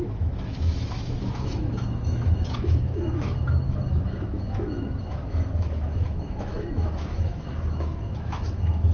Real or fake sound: fake